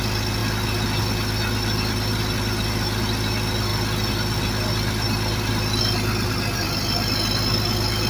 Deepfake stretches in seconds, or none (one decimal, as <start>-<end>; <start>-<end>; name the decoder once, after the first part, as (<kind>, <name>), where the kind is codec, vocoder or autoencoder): none